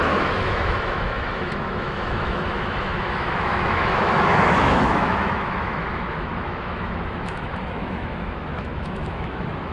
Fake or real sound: fake